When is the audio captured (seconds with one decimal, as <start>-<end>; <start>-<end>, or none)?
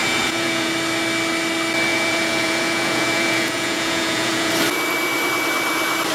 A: 0.7-1.9; 4.5-6.1